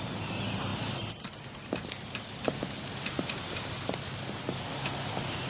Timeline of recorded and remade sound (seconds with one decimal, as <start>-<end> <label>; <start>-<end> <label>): 0.0-5.5 recorded